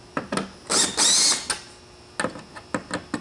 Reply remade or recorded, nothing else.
recorded